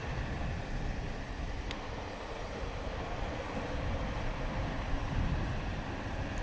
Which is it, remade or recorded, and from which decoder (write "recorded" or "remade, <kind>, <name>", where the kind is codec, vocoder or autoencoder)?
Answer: recorded